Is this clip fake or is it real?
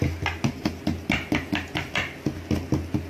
real